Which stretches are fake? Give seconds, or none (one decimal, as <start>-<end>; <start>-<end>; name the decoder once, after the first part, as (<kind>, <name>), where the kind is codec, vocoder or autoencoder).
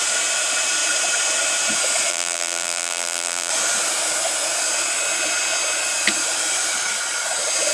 2.1-3.5 (vocoder, BigVGAN v2)